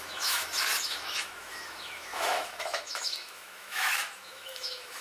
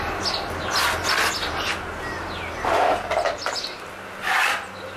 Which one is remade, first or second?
first